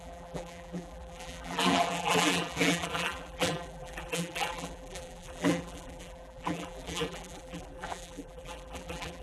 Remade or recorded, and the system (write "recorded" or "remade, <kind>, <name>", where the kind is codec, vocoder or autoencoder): remade, vocoder, BigVGAN v2